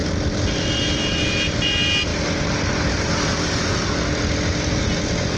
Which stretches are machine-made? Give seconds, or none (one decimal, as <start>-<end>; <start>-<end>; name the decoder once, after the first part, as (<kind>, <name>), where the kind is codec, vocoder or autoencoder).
none